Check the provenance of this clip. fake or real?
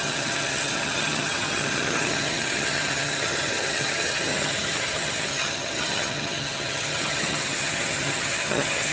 fake